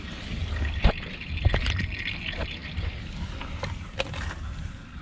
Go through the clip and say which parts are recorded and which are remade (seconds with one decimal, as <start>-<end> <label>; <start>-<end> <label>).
0.0-5.0 recorded